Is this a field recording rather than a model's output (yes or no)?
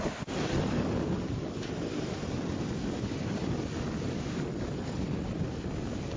yes